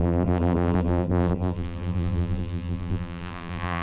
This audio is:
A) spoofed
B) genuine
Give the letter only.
A